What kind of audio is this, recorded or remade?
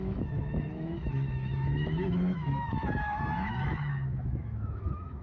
remade